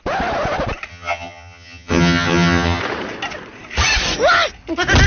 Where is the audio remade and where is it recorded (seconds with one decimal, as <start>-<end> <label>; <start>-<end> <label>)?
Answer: 0.0-0.9 recorded; 0.9-2.8 remade; 2.8-5.1 recorded